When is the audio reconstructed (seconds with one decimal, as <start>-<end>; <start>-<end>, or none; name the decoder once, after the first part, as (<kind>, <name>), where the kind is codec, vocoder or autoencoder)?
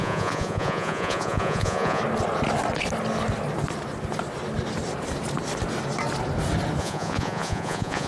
0.0-2.0 (vocoder, Vocos); 6.8-8.1